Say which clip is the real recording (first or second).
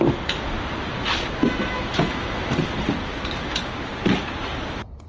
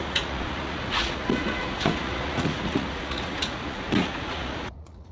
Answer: first